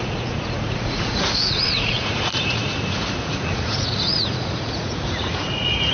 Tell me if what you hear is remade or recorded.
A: remade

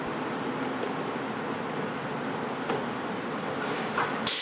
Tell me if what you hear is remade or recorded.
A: recorded